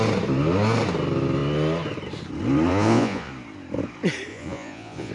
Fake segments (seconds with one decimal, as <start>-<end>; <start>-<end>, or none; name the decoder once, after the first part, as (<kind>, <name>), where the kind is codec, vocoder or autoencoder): 2.7-3.3 (vocoder, Vocos); 4.3-5.1